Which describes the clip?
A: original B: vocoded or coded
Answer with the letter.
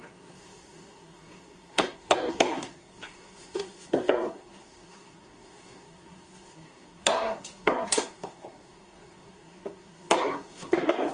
B